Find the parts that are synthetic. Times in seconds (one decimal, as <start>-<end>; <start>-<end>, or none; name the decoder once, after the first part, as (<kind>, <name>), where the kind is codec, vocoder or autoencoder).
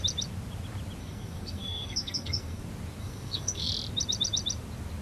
1.0-2.6 (codec, SNAC); 3.0-3.7